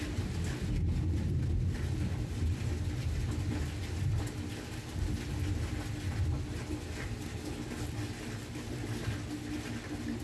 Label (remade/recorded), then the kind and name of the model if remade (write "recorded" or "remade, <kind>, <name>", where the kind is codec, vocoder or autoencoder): recorded